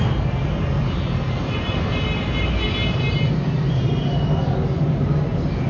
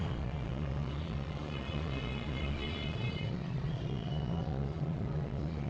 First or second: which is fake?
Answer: second